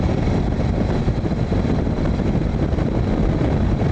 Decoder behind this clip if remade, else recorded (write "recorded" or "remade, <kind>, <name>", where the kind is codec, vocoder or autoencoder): recorded